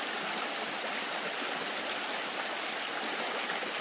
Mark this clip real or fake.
real